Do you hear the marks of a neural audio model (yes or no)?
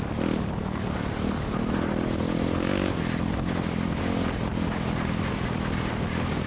no